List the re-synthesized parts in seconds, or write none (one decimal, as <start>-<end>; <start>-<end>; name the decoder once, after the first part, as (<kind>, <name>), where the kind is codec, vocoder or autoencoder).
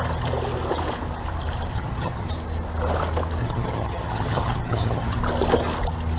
1.7-2.3 (vocoder, HiFi-GAN); 3.4-5.2